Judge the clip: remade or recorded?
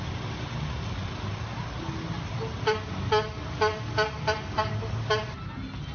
recorded